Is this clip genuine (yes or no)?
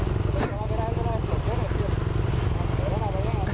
yes